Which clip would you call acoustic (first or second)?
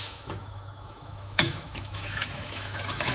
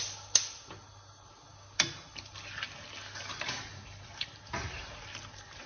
second